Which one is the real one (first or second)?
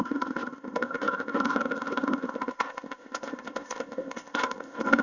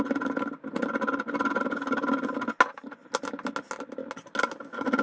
second